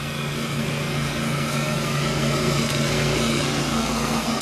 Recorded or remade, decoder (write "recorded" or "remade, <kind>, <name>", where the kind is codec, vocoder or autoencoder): remade, codec, SNAC